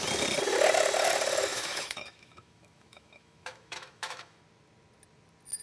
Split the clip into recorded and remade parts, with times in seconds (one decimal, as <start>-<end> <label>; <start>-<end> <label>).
0.0-1.5 recorded; 1.5-4.4 remade; 4.4-5.6 recorded